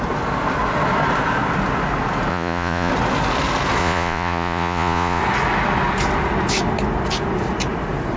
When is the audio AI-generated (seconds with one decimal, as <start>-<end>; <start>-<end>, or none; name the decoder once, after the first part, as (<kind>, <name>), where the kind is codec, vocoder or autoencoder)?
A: 2.3-2.9 (vocoder, Vocos); 3.8-5.2